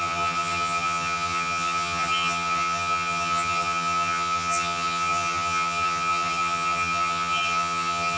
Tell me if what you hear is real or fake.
fake